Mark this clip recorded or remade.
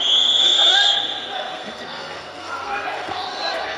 remade